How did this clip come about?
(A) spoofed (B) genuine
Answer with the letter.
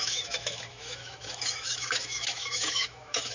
A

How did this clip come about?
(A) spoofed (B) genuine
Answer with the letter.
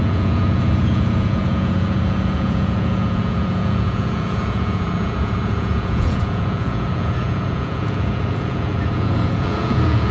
A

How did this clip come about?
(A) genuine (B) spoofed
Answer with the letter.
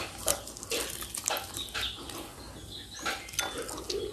A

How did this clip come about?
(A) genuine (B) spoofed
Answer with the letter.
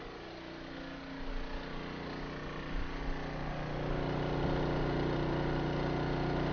A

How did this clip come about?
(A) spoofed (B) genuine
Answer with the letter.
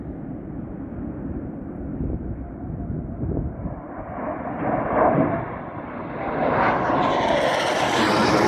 B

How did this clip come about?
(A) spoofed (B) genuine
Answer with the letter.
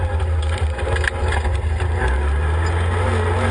B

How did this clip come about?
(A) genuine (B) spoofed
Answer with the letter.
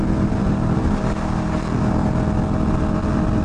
A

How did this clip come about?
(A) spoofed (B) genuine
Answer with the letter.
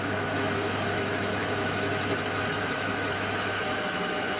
A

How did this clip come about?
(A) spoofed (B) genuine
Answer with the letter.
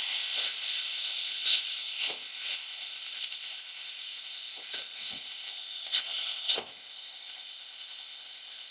A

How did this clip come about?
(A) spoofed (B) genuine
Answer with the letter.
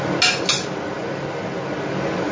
B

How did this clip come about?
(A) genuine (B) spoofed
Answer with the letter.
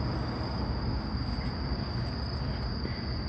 A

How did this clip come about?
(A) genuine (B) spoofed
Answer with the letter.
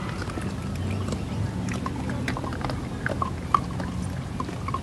A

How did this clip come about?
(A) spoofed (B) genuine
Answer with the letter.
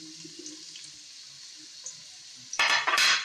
A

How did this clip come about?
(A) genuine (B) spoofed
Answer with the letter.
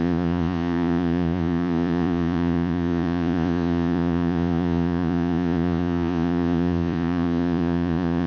B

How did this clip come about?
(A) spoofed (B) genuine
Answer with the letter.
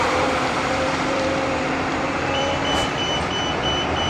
A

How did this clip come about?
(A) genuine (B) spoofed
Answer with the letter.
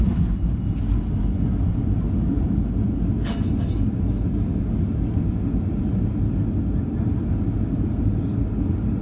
A